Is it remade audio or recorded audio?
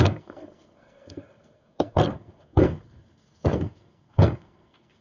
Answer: remade